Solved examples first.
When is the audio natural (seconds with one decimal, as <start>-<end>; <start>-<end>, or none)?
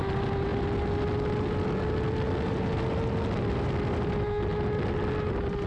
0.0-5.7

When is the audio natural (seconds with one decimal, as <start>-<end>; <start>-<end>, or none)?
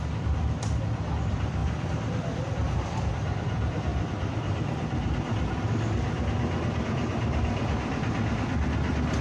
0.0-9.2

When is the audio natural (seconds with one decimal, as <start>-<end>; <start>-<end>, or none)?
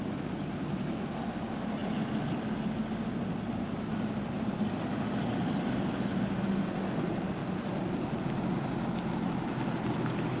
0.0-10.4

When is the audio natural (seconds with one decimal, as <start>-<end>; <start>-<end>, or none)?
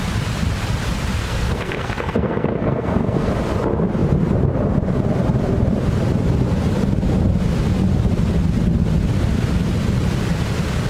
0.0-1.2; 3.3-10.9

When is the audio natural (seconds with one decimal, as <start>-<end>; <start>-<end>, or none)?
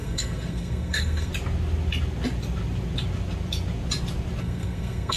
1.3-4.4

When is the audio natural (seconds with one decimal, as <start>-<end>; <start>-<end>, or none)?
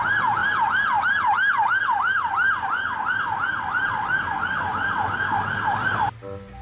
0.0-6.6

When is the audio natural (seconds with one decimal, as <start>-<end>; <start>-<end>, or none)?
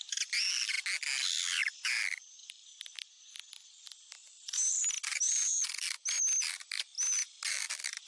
0.0-8.1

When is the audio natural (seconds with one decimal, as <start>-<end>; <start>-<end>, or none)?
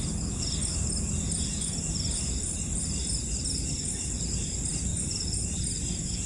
0.0-6.3